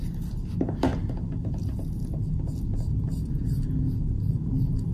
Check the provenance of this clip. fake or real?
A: real